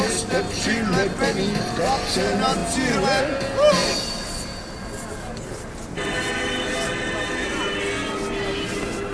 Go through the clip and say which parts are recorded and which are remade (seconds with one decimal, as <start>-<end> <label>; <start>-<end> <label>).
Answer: 0.0-3.8 recorded; 3.8-4.4 remade; 4.4-9.1 recorded

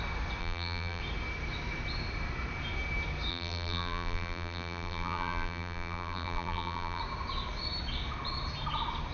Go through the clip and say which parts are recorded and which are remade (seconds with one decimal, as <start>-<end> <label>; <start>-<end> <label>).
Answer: 0.0-0.4 recorded; 0.4-1.0 remade; 1.0-3.3 recorded; 3.3-7.0 remade; 7.0-9.1 recorded

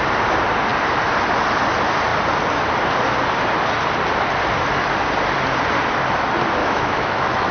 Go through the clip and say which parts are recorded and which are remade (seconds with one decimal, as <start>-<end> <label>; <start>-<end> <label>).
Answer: 0.0-6.6 recorded; 6.6-7.5 remade

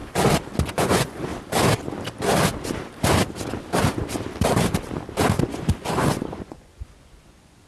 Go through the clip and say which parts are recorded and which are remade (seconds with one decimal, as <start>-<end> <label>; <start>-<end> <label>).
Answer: 0.0-0.7 recorded; 0.7-1.3 remade; 1.3-5.4 recorded; 5.4-7.7 remade